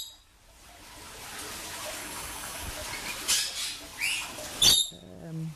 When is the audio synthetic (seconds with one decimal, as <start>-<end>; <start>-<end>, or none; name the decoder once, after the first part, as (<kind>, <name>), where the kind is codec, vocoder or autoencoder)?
2.0-2.7 (codec, DAC)